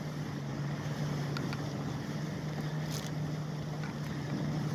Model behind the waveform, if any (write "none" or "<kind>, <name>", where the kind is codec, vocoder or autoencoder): none